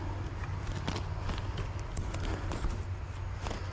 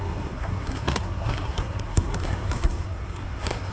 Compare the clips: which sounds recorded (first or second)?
first